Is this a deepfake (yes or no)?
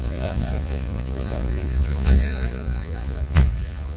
yes